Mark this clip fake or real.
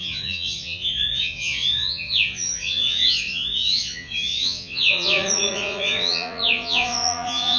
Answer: fake